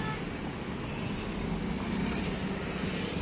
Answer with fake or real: real